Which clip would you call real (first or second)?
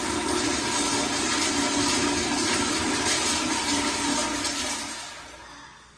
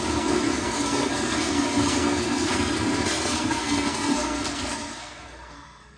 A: first